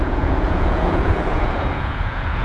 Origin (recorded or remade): remade